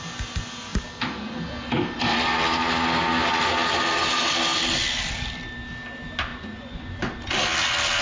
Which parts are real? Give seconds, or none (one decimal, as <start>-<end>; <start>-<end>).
0.0-6.3; 7.0-8.0